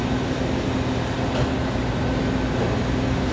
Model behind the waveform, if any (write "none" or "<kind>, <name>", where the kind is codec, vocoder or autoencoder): none